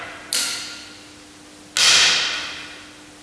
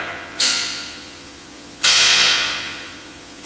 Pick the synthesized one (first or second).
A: second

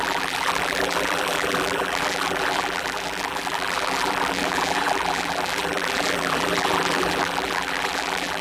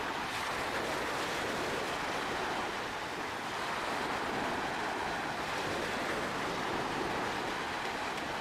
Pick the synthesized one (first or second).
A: first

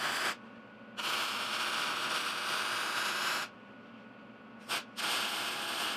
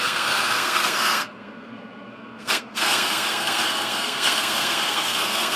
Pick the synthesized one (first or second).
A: second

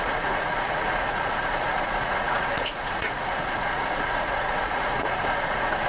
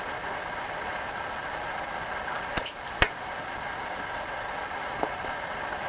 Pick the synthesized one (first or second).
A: first